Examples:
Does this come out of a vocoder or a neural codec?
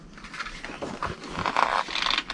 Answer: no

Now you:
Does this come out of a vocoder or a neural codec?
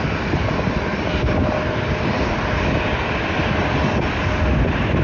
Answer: no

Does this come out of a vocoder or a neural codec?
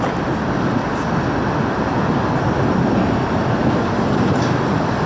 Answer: no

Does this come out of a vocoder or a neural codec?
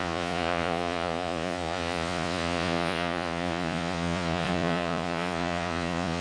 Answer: yes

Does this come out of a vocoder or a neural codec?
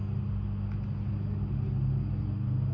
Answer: no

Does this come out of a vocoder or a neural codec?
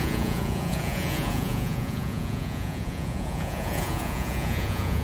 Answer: yes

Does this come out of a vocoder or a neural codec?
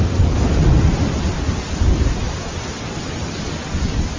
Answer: no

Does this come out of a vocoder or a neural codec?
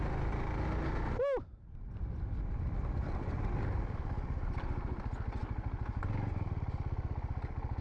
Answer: no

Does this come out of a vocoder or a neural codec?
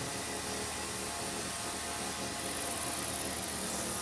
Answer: no